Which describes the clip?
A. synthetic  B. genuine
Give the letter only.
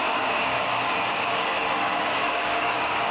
A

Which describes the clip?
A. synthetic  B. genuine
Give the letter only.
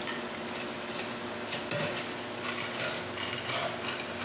B